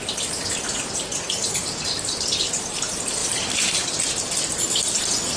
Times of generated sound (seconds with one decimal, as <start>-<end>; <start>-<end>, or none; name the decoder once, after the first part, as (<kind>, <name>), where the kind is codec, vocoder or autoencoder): 1.4-2.7 (vocoder, BigVGAN v2); 3.2-3.9

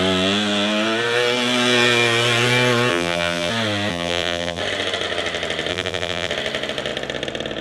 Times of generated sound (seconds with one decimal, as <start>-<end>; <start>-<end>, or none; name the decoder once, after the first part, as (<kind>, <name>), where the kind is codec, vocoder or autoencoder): 2.9-3.5 (vocoder, BigVGAN v2); 3.9-4.6; 5.7-6.3

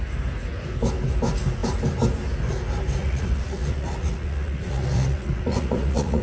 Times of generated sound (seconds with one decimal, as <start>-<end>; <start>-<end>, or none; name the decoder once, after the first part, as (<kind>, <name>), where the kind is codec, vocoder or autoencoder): 3.0-6.2 (vocoder, Vocos)

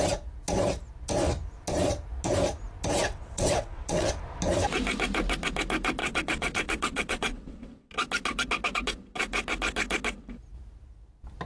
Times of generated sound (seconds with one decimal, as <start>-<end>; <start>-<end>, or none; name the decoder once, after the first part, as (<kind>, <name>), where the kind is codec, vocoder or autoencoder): 3.0-4.1 (vocoder, WaveNeXt); 6.0-7.9

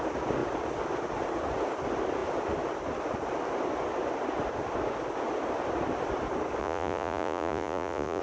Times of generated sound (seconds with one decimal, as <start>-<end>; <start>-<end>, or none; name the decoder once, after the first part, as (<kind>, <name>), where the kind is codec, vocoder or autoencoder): 6.6-8.2 (vocoder, Vocos)

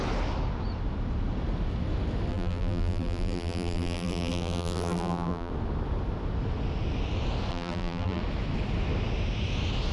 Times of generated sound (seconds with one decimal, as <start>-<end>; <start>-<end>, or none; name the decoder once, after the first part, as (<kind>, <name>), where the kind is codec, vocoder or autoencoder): 2.3-5.5 (vocoder, BigVGAN v2); 7.5-8.2

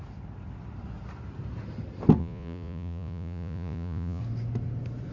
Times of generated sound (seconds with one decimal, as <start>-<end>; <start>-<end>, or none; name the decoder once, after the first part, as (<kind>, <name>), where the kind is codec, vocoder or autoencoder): 2.2-4.2 (vocoder, Vocos)

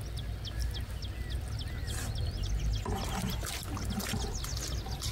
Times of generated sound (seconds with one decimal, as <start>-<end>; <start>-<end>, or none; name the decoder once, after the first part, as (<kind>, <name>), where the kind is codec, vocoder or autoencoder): none